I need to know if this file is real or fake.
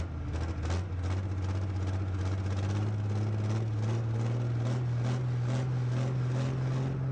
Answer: real